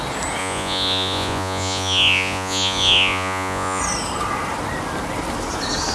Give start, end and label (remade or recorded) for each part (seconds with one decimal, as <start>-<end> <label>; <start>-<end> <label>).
0.0-0.4 recorded; 0.4-3.8 remade; 3.8-5.9 recorded